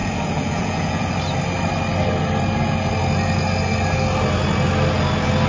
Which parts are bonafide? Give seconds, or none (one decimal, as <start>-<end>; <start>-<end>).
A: 1.1-5.5